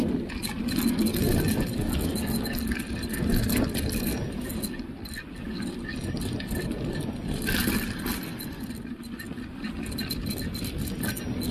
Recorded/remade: recorded